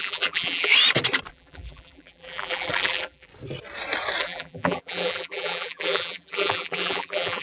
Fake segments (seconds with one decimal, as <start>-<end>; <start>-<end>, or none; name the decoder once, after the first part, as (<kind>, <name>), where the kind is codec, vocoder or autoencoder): 0.0-0.7 (vocoder, BigVGAN v2); 1.3-3.3; 4.2-7.4